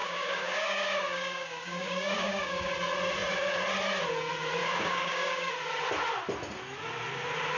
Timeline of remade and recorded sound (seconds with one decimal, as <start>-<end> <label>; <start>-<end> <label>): 0.0-2.7 remade; 2.7-4.6 recorded; 4.6-5.5 remade; 5.5-7.6 recorded